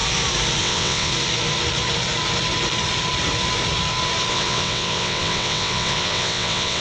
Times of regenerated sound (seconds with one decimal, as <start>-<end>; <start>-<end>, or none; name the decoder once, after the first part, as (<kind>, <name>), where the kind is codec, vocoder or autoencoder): 0.6-1.1 (vocoder, WaveNeXt); 4.3-6.8